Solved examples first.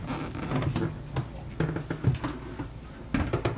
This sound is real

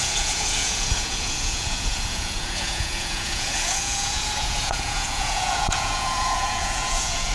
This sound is fake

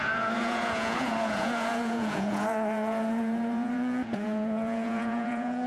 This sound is fake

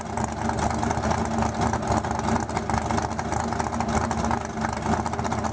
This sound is real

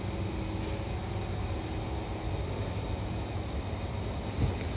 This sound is real